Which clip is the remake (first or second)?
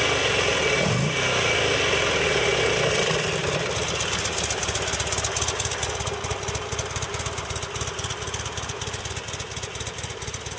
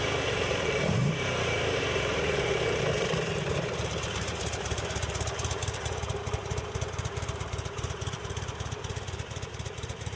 second